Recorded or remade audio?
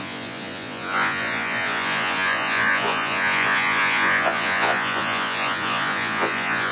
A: remade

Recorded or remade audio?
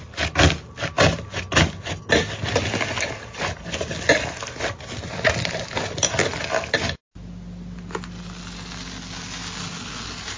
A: recorded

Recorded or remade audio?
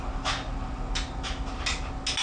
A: recorded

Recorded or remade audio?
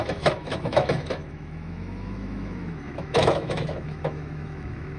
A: remade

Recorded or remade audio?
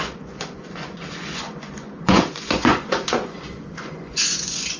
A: remade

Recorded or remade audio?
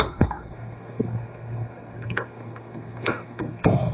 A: remade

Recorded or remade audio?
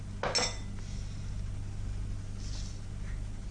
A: recorded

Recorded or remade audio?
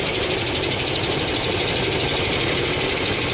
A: recorded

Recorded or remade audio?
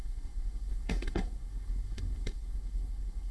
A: remade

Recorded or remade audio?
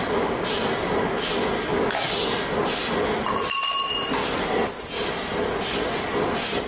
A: recorded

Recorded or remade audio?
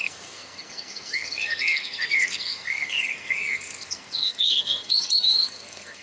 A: remade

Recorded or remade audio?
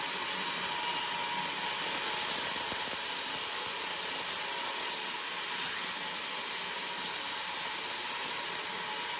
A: recorded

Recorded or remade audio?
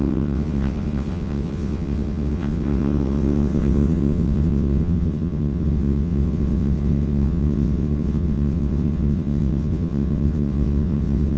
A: remade